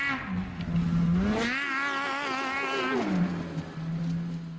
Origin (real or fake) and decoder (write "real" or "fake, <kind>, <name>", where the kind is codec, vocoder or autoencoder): real